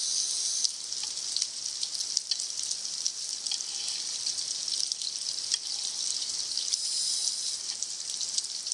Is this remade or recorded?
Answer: recorded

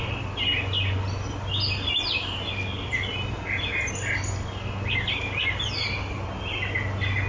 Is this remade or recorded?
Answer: recorded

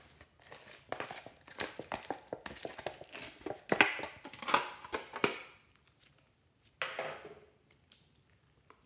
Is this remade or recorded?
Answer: recorded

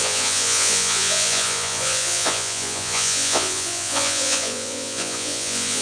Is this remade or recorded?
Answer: remade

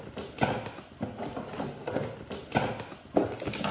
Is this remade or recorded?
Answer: recorded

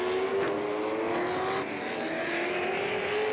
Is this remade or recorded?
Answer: recorded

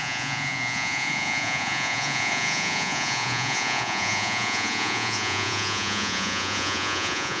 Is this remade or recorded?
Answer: remade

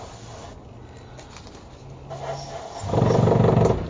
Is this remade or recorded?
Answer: recorded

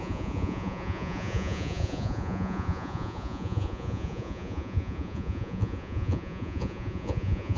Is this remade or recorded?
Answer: remade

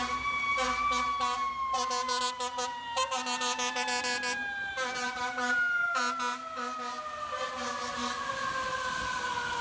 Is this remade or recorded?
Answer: recorded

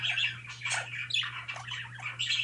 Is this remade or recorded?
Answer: recorded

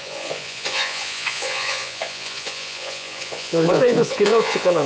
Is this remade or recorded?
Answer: remade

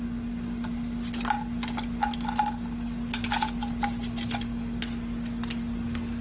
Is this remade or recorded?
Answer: recorded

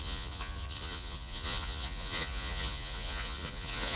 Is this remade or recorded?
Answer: remade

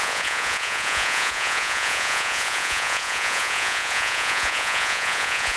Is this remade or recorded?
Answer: remade